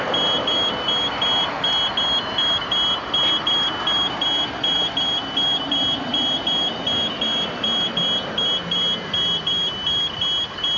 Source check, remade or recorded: recorded